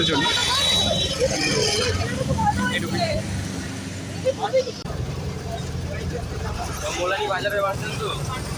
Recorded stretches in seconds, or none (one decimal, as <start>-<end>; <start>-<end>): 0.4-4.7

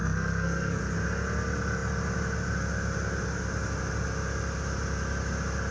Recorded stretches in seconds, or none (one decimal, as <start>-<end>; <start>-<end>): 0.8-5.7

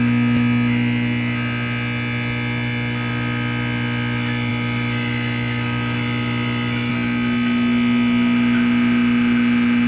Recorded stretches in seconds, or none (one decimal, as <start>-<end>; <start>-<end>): 0.0-4.5; 6.9-9.9

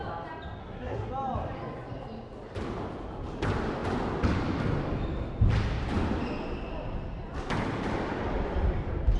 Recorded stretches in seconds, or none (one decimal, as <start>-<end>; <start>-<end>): 0.0-0.6; 1.1-9.2